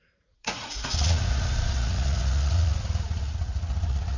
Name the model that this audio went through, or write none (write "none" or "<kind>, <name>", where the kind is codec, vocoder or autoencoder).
vocoder, Vocos